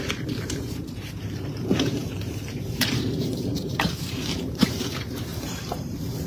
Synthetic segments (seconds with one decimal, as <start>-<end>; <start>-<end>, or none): 0.0-6.3